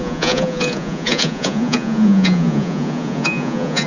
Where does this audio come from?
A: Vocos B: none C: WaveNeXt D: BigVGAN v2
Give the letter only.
A